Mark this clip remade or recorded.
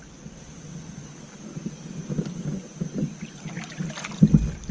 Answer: recorded